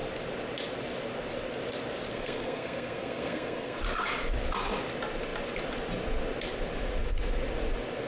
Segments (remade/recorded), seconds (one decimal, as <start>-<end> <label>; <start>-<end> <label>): 0.0-2.1 recorded; 2.1-3.8 remade; 3.8-8.1 recorded